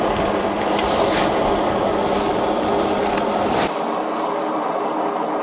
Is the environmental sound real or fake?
real